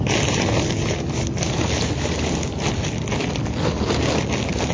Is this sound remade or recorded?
recorded